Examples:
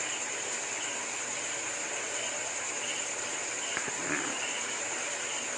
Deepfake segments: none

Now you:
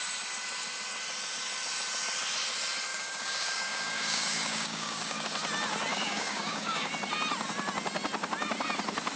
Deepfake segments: 2.9-5.2 (codec, DAC); 5.9-6.9

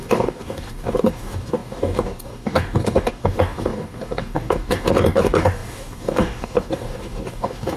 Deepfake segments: 0.0-7.8 (codec, DAC)

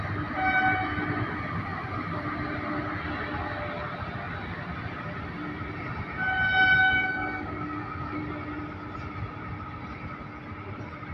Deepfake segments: 6.8-8.2 (codec, DAC)

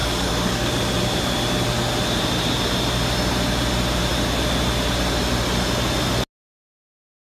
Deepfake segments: 0.0-0.7 (codec, DAC)

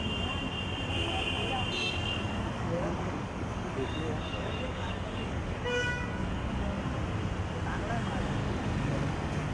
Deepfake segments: 1.8-6.8 (codec, DAC); 8.4-9.5

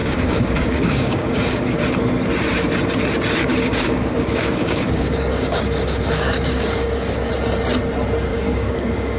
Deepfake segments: 0.0-1.8 (codec, DAC); 3.5-7.3; 8.3-9.2